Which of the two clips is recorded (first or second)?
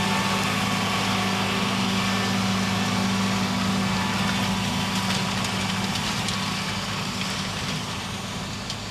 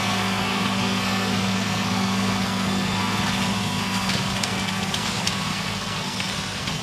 first